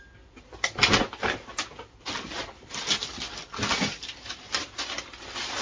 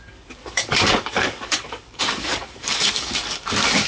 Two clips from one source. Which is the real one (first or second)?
first